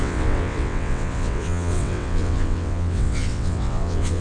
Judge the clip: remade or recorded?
remade